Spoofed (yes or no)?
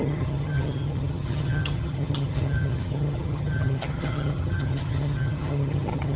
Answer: yes